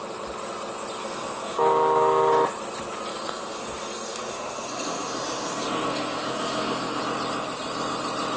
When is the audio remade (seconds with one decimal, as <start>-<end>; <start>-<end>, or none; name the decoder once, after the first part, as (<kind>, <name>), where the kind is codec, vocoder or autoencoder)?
1.0-2.3 (codec, SNAC); 3.1-7.0